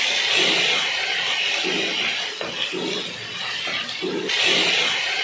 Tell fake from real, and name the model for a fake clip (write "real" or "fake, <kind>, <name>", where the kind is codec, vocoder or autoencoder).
real